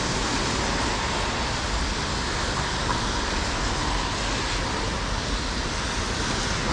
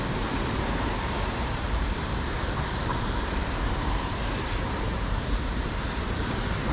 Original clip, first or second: first